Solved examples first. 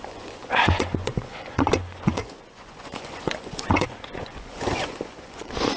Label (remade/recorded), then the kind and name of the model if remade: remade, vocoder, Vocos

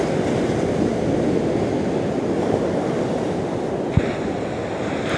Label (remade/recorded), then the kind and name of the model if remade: recorded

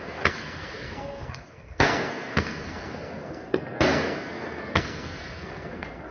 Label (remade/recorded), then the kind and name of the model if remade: remade, codec, SNAC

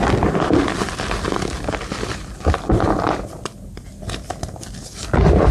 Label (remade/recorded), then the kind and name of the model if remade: recorded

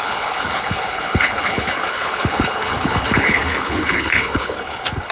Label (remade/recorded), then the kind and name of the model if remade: remade, codec, HILCodec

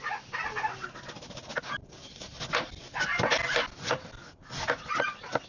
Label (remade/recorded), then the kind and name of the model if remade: recorded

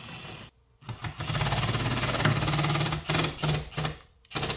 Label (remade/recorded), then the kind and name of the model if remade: recorded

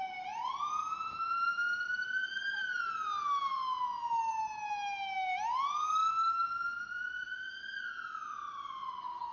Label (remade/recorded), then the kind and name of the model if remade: recorded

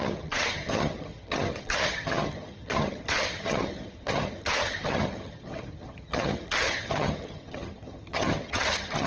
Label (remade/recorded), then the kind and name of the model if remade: remade, vocoder, HiFi-GAN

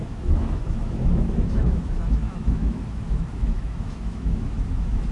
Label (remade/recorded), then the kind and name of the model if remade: remade, autoencoder, DAC-VAE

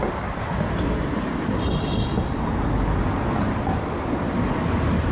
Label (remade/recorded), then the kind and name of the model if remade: recorded